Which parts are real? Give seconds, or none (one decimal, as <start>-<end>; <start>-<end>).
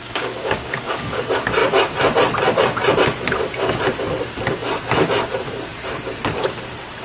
1.2-7.0